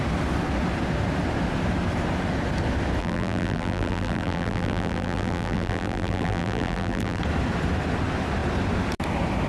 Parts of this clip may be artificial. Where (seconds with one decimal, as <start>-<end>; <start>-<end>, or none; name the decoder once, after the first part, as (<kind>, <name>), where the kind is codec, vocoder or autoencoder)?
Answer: 3.0-7.2 (vocoder, BigVGAN v2)